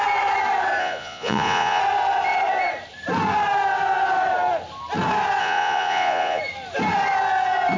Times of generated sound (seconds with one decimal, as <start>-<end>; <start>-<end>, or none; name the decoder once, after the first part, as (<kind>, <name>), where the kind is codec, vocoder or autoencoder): 0.8-1.8 (vocoder, Vocos); 5.4-6.4